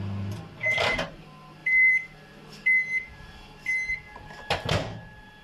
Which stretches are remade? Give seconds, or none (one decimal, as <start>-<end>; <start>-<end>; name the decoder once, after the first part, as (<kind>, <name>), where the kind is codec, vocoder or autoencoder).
0.6-1.2 (vocoder, BigVGAN v2); 1.6-3.9